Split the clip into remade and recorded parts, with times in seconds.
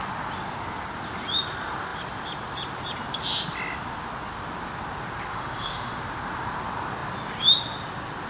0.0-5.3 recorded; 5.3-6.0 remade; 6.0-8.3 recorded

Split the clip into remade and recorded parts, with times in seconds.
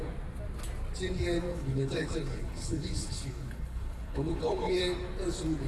0.0-1.5 recorded; 1.5-4.8 remade; 4.8-5.7 recorded